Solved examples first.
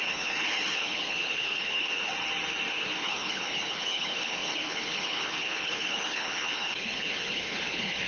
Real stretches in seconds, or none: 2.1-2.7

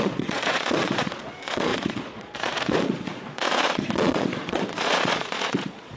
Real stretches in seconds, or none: none

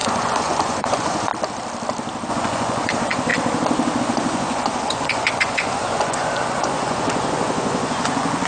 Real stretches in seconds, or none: 1.3-2.3; 3.3-4.0

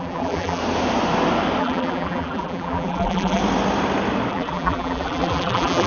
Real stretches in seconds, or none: 0.6-1.6; 3.4-4.3

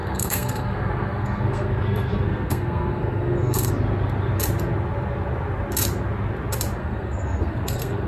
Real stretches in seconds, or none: 3.7-6.8

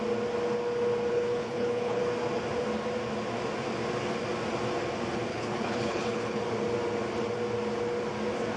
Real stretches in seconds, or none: 0.0-1.1; 2.0-5.3; 6.4-8.6